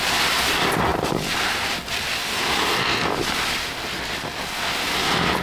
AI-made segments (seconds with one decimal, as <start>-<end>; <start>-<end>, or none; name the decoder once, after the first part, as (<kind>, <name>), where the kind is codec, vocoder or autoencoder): none